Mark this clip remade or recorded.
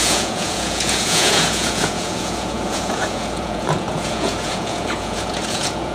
remade